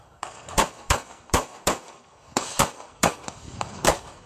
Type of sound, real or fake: fake